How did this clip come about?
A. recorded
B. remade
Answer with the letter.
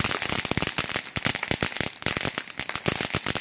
A